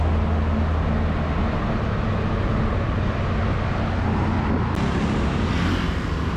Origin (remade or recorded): recorded